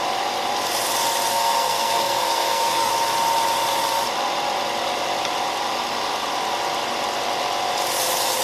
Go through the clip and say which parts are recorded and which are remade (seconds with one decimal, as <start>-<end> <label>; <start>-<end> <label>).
0.0-1.3 recorded; 1.3-2.9 remade; 2.9-8.4 recorded